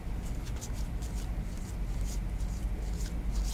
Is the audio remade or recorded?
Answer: recorded